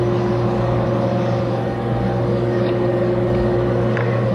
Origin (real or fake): fake